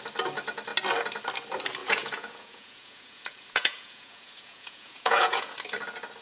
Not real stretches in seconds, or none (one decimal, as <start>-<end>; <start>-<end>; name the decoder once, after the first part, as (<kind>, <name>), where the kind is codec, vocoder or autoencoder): 1.8-5.5 (vocoder, Vocos)